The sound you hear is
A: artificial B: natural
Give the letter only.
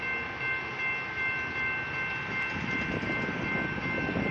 B